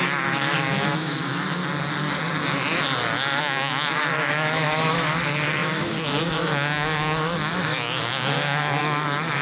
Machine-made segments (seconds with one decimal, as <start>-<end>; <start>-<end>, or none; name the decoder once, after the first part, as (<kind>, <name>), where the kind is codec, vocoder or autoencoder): 0.0-1.6 (autoencoder, DAC-VAE); 3.4-9.4